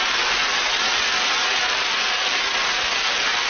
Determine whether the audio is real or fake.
real